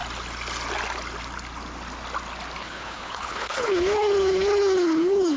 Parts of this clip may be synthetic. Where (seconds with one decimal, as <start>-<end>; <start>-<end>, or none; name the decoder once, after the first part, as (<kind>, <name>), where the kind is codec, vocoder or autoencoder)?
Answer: 2.6-5.4 (codec, HILCodec)